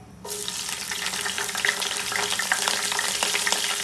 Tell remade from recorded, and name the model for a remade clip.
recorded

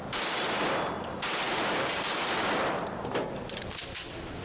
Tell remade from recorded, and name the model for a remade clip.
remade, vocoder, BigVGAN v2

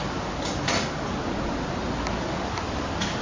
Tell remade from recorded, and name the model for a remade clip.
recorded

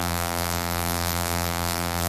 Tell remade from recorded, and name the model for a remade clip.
remade, vocoder, BigVGAN v2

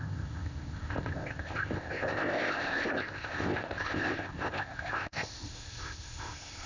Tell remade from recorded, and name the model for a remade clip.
remade, codec, ZipCodec